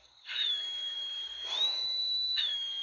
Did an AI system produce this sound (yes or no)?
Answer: yes